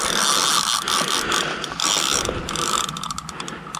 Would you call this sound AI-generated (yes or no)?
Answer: no